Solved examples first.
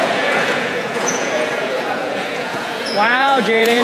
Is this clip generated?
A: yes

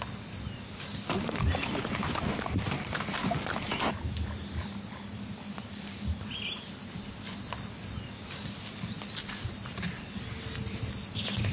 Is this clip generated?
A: no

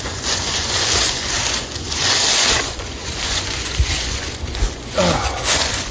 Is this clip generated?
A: yes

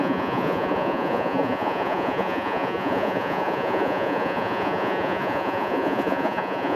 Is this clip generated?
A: yes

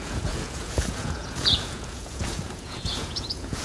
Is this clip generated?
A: yes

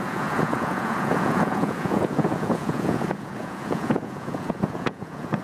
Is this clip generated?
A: yes